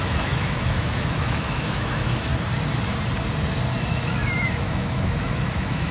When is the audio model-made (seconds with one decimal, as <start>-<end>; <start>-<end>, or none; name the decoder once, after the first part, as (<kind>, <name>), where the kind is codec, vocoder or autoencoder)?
0.0-2.3 (autoencoder, DAC-VAE); 3.8-5.9